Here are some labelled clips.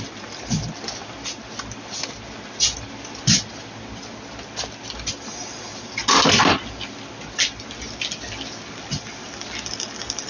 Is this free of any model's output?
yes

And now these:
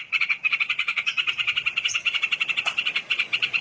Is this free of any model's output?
no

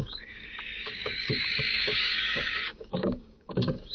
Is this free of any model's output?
no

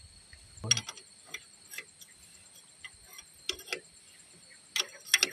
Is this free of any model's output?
yes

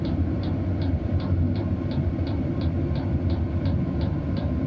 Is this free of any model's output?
yes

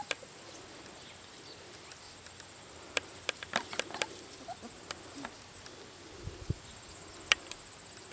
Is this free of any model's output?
yes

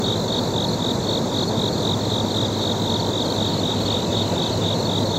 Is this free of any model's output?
yes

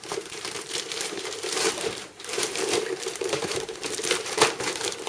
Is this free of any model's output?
no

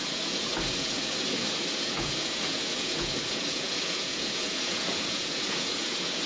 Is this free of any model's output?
no